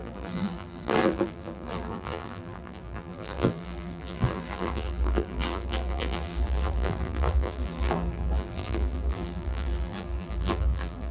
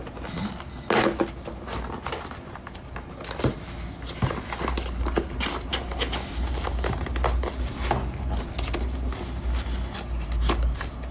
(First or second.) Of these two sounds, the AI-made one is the first